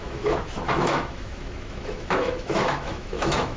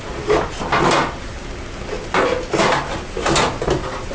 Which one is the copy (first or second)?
first